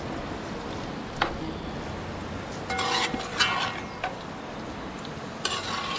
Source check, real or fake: real